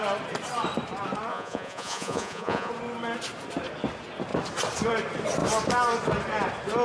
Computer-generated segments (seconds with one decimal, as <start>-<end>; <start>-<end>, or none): 1.3-2.7